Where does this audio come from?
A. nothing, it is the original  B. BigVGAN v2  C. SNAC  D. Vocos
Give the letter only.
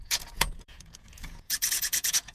D